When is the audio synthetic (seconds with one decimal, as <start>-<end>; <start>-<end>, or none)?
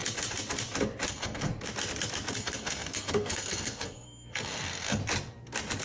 1.1-1.5; 2.3-5.0